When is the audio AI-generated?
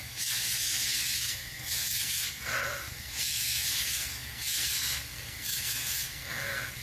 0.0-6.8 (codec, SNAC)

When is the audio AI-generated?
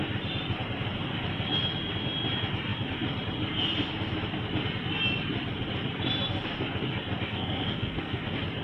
7.3-8.2 (codec, SNAC)